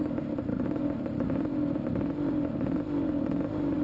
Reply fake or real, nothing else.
real